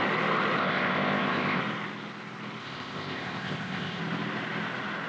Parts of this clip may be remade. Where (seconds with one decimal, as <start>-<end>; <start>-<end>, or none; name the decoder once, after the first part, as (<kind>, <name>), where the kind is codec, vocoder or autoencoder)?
0.6-1.6 (codec, ZipCodec); 2.6-4.0